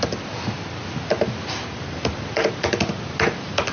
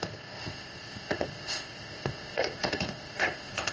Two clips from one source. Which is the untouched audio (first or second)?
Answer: first